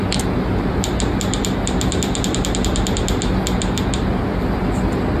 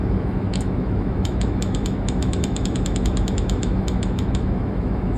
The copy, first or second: second